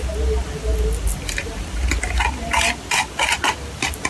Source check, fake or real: real